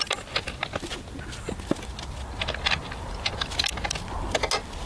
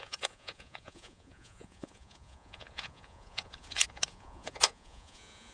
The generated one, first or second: second